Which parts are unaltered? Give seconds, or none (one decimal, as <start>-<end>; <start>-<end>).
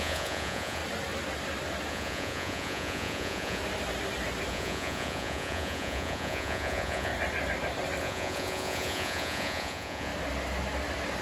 0.8-1.9; 3.6-4.5; 7.1-8.0; 10.1-11.2